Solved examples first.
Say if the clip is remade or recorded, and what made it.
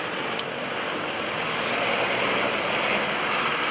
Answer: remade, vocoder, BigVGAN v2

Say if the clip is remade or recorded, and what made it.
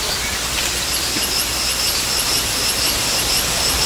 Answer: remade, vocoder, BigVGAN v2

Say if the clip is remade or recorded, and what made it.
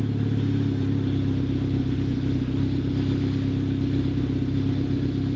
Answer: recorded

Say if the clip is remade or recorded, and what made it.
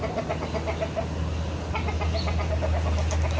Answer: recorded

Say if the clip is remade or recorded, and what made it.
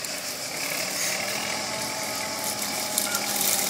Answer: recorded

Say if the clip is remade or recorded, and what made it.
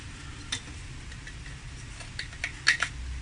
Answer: recorded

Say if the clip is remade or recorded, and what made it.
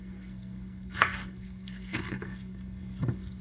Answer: remade, codec, SNAC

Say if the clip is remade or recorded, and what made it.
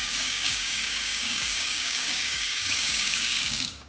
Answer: remade, codec, DAC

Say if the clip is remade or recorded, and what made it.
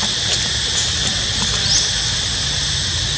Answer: recorded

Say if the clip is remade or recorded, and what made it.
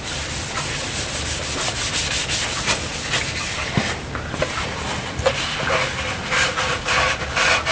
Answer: recorded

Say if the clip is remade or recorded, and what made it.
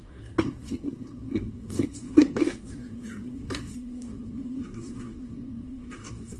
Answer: remade, codec, SNAC